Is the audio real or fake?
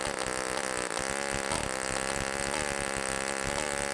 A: real